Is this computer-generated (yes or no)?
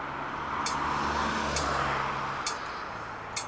no